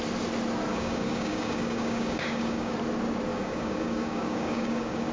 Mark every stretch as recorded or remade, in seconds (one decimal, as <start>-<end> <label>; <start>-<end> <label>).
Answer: 0.0-0.7 recorded; 0.7-2.7 remade; 2.7-3.3 recorded; 3.3-5.1 remade